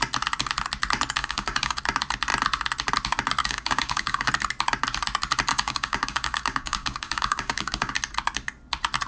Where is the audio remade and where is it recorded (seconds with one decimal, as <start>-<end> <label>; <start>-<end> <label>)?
0.0-1.2 recorded; 1.2-1.8 remade; 1.8-3.4 recorded; 3.4-4.3 remade; 4.3-5.5 recorded; 5.5-7.9 remade; 7.9-9.1 recorded

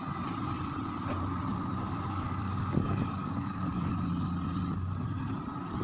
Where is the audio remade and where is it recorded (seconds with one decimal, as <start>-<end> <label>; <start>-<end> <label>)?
0.0-1.5 recorded; 1.5-3.9 remade; 3.9-5.8 recorded

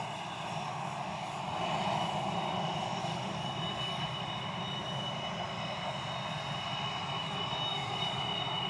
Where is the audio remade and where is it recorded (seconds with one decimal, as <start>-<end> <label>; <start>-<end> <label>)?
0.0-0.7 recorded; 0.7-1.4 remade; 1.4-3.0 recorded; 3.0-4.2 remade; 4.2-7.2 recorded; 7.2-8.2 remade; 8.2-8.7 recorded

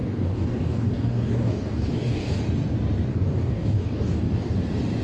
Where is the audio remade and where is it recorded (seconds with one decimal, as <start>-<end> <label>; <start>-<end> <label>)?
0.0-2.4 remade; 2.4-3.1 recorded; 3.1-4.5 remade; 4.5-5.0 recorded